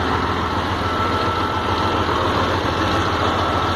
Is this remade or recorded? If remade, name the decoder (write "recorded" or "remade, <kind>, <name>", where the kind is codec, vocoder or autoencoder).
remade, vocoder, BigVGAN v2